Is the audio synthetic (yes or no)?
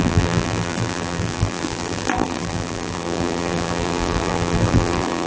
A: yes